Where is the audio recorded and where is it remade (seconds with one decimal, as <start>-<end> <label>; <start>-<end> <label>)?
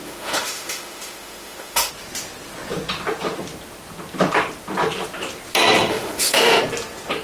0.0-1.9 remade; 1.9-5.9 recorded; 5.9-6.6 remade; 6.6-7.2 recorded